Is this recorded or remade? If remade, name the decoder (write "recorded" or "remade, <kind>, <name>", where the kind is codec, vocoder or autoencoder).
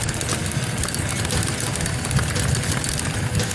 recorded